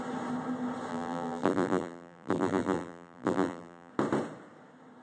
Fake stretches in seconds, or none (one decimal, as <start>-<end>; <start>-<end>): 0.9-3.9